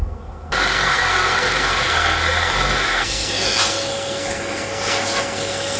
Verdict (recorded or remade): remade